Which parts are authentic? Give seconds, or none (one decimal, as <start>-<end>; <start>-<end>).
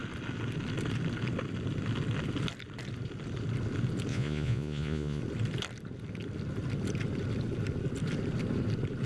0.0-4.1; 5.2-9.1